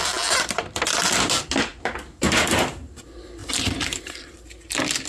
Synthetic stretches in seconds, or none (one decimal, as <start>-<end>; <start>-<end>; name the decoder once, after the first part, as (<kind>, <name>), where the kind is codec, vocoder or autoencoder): none